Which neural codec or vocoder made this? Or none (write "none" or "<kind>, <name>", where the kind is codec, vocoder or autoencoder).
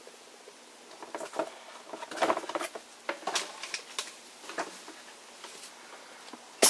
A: none